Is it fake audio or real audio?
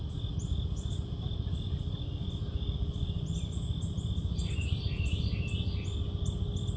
real